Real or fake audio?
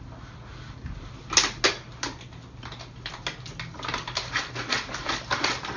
real